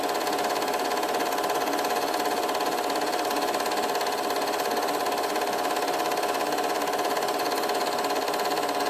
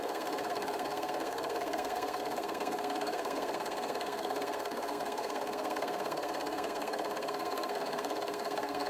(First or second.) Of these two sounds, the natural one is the first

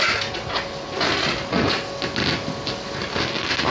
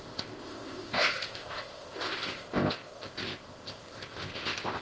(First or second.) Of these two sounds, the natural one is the first